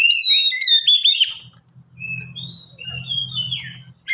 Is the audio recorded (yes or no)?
yes